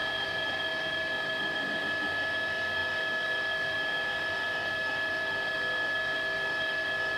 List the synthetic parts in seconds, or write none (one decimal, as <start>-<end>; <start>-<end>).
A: 0.0-7.2